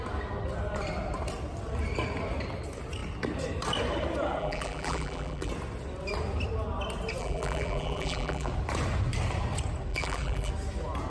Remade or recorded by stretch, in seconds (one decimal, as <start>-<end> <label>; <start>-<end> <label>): 0.0-4.4 recorded; 4.4-5.5 remade; 5.5-7.2 recorded; 7.2-8.5 remade; 8.5-9.9 recorded; 9.9-10.5 remade; 10.5-11.1 recorded